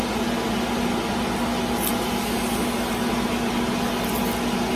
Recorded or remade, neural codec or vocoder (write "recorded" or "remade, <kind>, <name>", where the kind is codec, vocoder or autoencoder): recorded